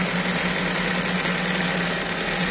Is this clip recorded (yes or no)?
yes